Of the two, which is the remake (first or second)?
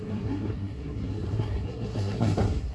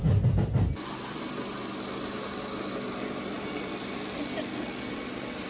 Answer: first